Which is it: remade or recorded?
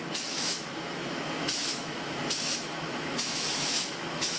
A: remade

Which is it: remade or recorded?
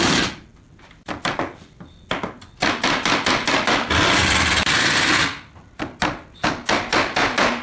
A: recorded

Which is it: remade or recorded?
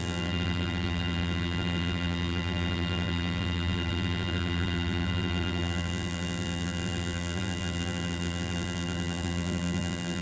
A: remade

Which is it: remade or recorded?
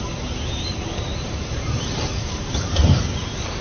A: remade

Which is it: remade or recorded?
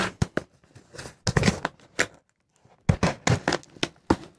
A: recorded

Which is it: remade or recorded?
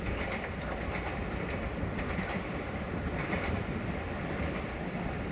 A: recorded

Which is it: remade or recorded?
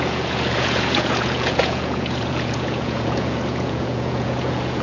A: remade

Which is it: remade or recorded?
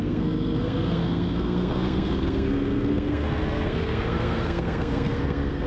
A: remade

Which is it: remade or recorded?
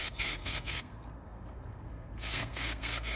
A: remade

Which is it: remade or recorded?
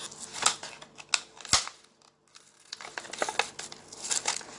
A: recorded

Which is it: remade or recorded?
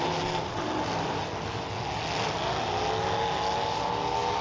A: recorded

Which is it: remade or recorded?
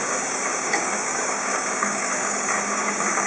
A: remade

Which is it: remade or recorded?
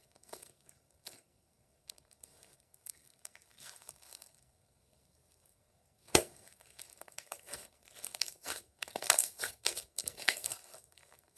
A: remade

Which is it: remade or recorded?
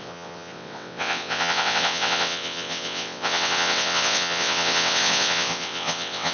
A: remade